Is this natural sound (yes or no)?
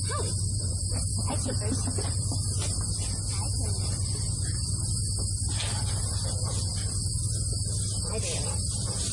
yes